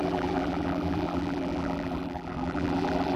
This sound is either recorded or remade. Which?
remade